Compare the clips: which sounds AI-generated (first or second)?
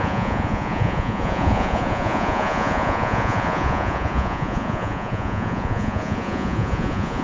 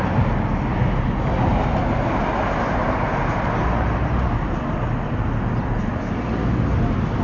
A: first